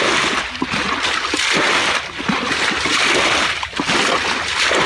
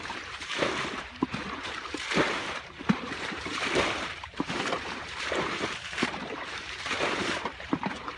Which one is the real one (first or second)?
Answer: first